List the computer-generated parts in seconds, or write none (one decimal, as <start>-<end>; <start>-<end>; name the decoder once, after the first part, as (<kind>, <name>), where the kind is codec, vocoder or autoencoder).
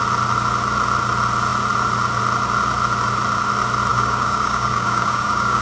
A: 3.9-5.6 (codec, DAC)